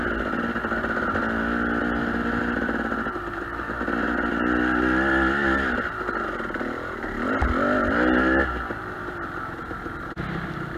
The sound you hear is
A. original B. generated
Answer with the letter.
A